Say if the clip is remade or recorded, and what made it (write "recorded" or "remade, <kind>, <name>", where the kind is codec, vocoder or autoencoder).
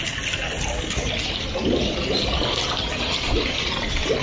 recorded